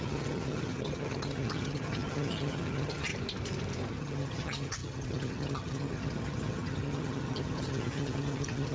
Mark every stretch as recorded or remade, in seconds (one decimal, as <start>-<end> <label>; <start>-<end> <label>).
0.0-3.1 remade; 3.1-3.9 recorded; 3.9-8.7 remade